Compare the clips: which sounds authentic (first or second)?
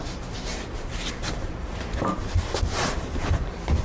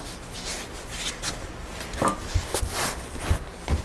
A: second